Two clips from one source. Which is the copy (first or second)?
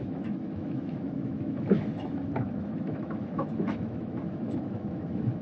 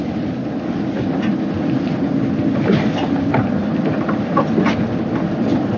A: first